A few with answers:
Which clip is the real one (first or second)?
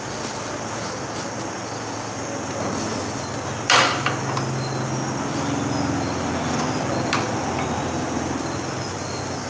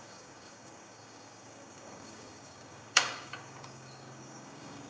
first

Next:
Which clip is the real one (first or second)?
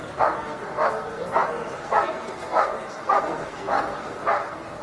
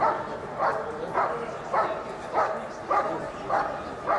second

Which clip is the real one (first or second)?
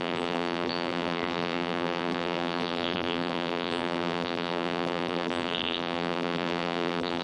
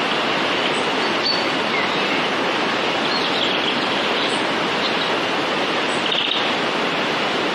second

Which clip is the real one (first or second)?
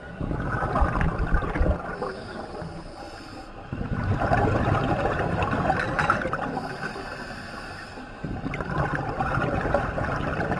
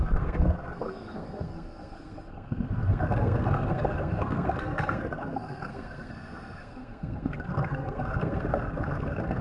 first